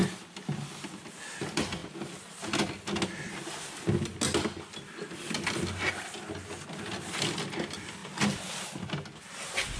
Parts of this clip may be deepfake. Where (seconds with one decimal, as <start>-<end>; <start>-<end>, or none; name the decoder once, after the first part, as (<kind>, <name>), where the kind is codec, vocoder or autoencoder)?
none